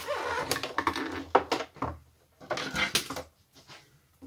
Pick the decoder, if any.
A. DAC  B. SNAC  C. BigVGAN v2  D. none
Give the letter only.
D